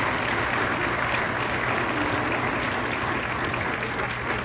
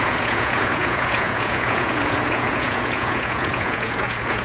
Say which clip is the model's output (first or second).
second